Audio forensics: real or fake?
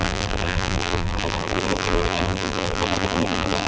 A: fake